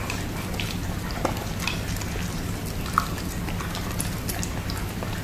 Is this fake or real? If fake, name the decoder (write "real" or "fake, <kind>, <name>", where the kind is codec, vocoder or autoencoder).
real